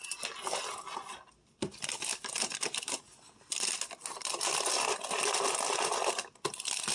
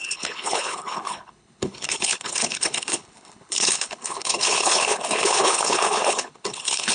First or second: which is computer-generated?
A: second